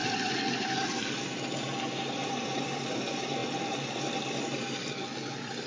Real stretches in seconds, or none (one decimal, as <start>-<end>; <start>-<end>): 1.3-2.2; 2.9-5.7